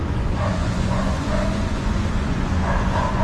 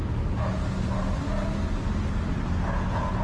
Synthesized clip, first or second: first